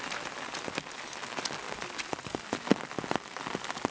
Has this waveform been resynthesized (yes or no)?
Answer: no